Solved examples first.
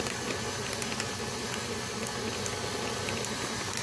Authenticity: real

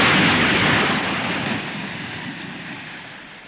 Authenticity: real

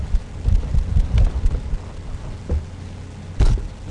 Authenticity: real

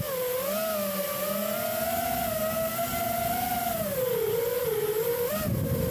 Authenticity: real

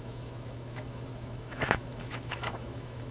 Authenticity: fake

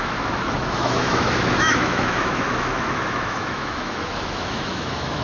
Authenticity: fake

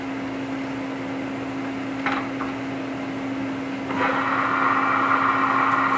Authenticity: real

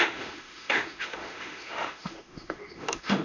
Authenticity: fake